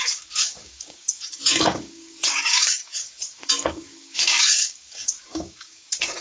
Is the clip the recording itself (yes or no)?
no